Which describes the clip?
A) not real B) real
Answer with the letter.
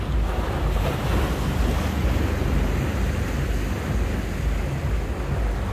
B